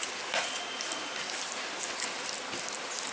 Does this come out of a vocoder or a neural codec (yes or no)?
no